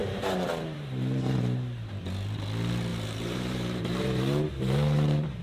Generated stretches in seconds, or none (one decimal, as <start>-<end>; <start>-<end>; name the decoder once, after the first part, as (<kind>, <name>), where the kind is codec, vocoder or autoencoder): 0.0-1.9 (vocoder, BigVGAN v2); 2.9-5.4